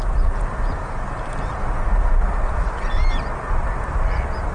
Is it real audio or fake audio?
real